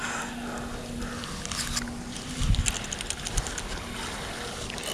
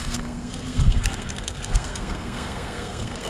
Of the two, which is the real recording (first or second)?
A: first